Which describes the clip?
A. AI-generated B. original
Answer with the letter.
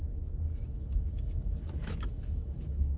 A